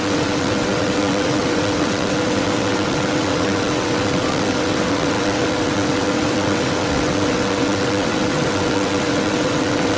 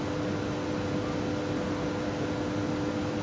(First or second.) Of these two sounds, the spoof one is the first